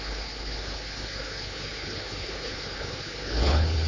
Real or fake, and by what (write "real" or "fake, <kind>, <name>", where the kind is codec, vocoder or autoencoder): fake, codec, HILCodec